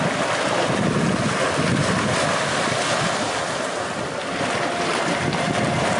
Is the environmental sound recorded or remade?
recorded